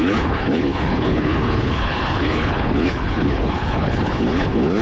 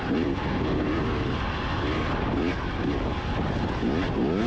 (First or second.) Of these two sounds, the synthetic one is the first